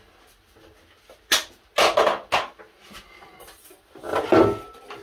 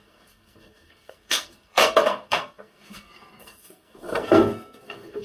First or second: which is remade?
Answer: second